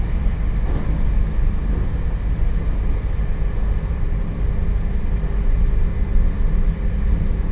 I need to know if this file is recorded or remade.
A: recorded